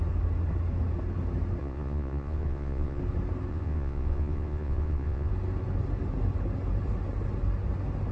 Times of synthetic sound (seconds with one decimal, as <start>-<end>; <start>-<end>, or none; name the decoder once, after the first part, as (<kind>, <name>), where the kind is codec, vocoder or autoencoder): 1.6-3.0 (vocoder, Vocos); 3.5-5.3